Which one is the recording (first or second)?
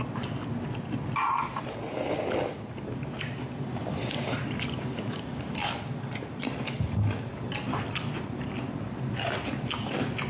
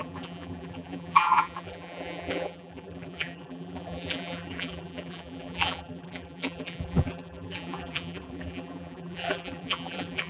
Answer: first